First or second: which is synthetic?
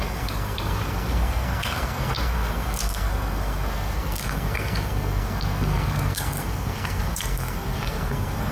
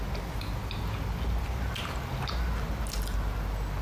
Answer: first